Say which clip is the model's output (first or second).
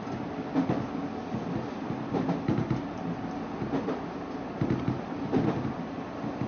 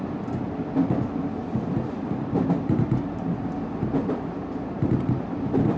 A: second